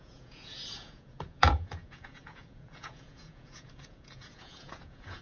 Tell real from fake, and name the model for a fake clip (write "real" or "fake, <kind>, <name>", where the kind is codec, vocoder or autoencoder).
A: fake, vocoder, Vocos